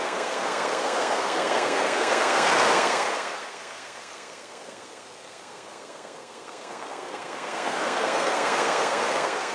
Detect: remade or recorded remade